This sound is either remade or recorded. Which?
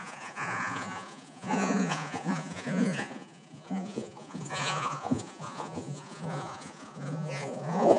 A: remade